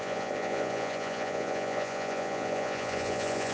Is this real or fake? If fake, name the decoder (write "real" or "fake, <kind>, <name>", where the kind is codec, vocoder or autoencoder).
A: fake, vocoder, Vocos